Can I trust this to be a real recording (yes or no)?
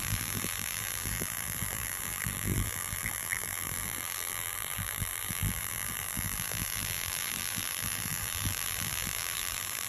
no